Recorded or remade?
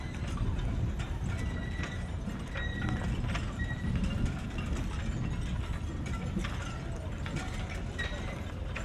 recorded